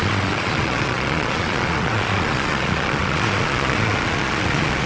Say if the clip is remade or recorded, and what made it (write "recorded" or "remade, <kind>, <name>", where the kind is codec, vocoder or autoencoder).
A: remade, vocoder, Vocos